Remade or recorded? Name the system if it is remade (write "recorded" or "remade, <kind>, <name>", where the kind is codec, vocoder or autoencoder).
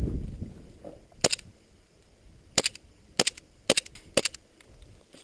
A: recorded